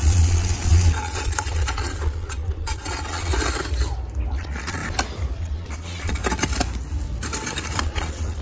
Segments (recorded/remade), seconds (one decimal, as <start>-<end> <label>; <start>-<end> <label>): 0.0-3.3 remade; 3.3-4.3 recorded; 4.3-4.8 remade; 4.8-5.4 recorded; 5.4-6.2 remade; 6.2-7.8 recorded; 7.8-8.4 remade